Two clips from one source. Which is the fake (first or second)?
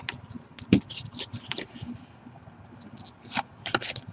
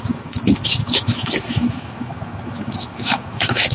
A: second